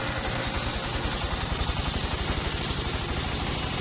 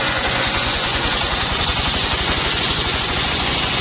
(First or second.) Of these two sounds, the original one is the first